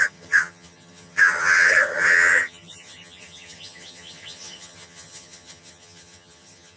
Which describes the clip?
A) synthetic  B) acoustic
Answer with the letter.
A